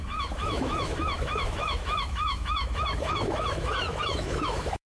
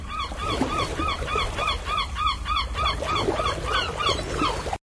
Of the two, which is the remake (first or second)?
first